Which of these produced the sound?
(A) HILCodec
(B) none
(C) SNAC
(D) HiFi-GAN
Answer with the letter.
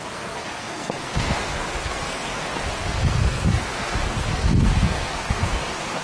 C